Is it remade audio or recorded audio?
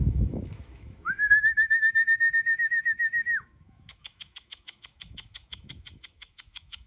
remade